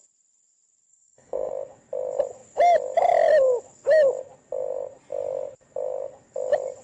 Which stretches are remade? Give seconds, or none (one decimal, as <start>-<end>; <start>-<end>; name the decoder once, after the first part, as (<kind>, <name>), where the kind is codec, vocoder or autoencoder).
0.9-1.5 (codec, SNAC)